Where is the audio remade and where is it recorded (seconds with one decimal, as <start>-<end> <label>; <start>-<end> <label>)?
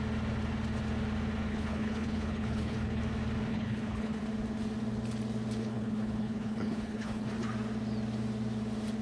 0.0-1.5 recorded; 1.5-3.0 remade; 3.0-3.5 recorded; 3.5-4.2 remade; 4.2-5.6 recorded; 5.6-7.3 remade; 7.3-9.0 recorded